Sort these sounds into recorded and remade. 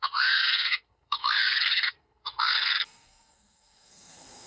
remade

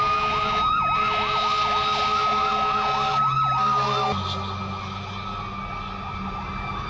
recorded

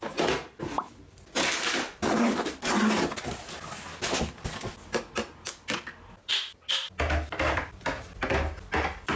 recorded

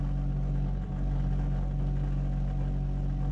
recorded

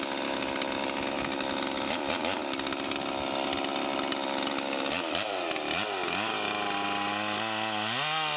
recorded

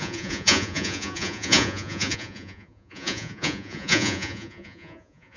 remade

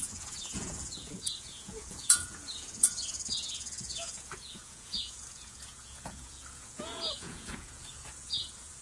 remade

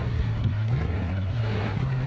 remade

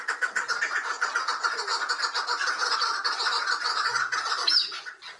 recorded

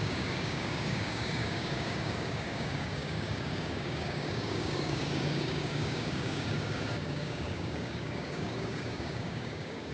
remade